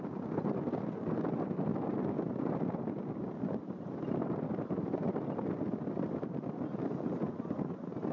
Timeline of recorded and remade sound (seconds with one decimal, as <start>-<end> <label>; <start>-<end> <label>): 0.0-8.1 recorded